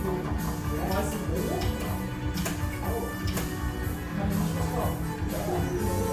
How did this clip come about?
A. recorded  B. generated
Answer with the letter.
A